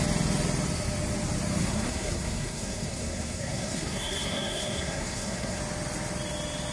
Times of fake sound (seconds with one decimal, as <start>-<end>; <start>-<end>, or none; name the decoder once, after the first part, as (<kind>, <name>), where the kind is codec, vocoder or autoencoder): 1.6-5.6 (codec, SNAC)